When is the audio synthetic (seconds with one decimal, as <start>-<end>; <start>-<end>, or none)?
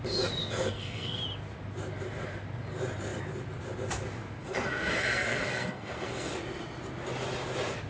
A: 0.4-1.2; 4.4-6.3